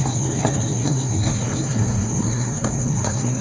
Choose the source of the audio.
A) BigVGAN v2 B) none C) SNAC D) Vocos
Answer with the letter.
C